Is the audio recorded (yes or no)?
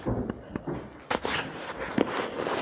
yes